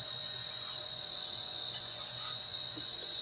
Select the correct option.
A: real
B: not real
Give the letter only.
B